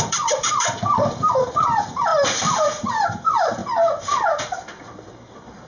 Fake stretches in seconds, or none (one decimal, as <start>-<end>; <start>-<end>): 0.0-3.6